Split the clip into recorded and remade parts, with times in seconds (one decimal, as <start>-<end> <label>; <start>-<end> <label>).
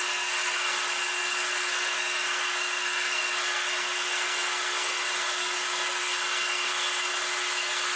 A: 0.0-8.0 remade